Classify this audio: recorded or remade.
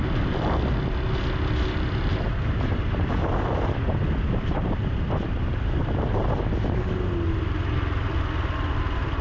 recorded